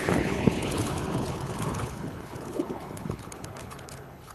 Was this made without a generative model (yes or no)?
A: no